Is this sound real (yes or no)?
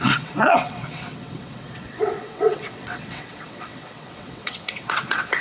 no